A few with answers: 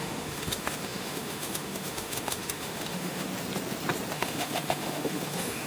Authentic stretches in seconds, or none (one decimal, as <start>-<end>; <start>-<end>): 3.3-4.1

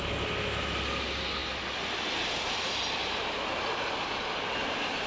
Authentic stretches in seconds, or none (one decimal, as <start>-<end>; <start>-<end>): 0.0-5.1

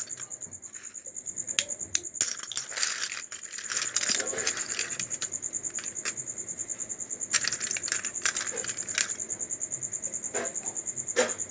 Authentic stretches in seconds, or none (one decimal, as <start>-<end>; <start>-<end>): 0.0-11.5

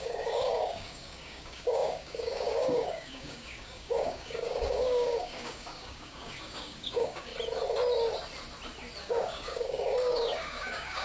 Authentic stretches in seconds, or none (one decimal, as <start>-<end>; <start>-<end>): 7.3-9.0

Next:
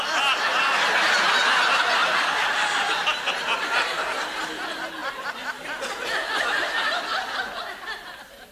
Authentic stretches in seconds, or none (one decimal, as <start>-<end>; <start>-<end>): 0.0-2.0; 3.3-5.0